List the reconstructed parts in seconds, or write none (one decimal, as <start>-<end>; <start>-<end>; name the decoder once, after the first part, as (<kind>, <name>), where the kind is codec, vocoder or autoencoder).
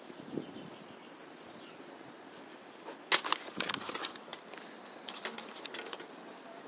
none